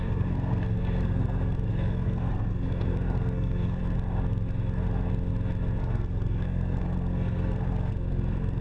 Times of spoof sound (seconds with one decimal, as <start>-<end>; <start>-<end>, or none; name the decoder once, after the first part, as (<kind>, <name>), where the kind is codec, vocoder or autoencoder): 0.0-3.8 (codec, SNAC); 5.8-8.6